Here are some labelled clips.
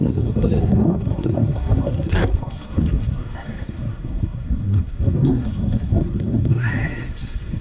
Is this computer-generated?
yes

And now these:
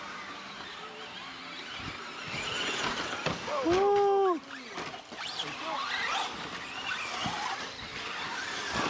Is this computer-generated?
no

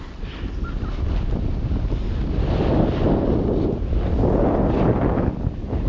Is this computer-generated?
no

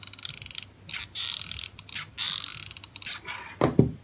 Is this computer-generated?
no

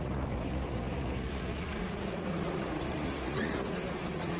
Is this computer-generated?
yes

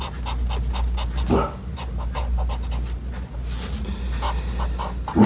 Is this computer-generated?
no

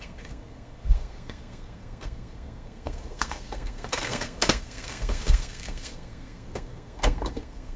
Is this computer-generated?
yes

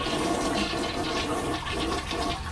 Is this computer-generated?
no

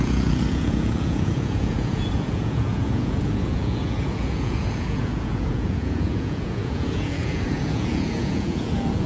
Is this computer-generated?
yes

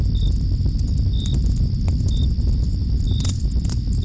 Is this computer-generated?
no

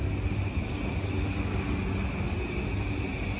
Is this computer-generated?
no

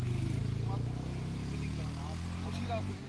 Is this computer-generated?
no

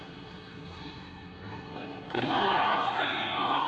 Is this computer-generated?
yes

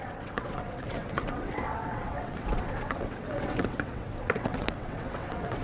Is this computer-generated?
yes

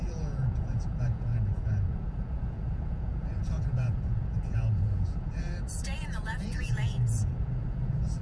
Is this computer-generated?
yes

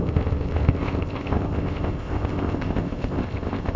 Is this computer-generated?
yes